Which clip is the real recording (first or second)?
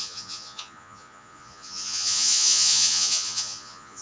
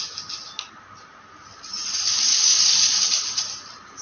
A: second